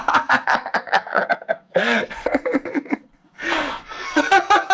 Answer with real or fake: fake